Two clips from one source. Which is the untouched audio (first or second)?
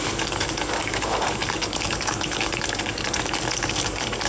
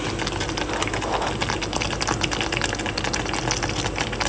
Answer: second